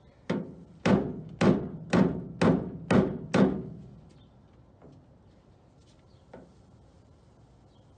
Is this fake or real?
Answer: real